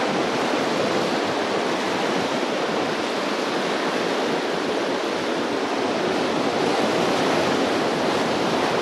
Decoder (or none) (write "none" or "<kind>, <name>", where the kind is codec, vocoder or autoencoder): none